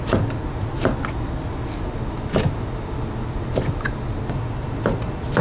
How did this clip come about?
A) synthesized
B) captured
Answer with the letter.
B